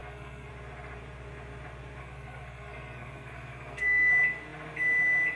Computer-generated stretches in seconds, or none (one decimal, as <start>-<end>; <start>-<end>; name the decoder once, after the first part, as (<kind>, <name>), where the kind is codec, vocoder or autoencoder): 0.0-0.5 (codec, SNAC); 2.0-4.1

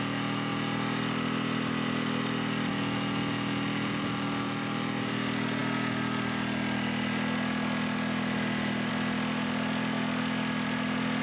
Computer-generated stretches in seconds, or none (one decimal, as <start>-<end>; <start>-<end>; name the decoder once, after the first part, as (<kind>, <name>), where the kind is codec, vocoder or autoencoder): none

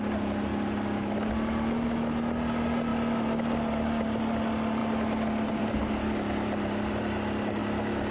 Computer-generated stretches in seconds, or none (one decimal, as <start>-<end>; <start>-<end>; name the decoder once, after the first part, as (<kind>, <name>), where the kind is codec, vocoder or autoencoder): none

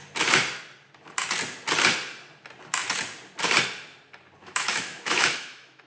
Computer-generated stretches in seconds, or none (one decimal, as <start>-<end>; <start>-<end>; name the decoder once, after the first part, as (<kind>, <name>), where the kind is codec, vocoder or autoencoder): 4.4-5.9 (autoencoder, DAC-VAE)